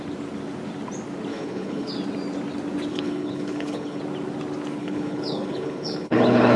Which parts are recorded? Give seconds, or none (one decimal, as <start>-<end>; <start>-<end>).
0.0-1.3; 1.9-2.9; 4.0-4.8